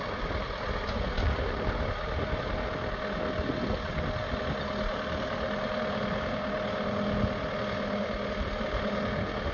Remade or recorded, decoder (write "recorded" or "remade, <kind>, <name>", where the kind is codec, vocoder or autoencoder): recorded